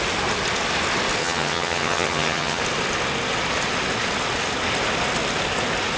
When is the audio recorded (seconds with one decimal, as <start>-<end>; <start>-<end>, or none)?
0.0-1.2; 2.6-6.0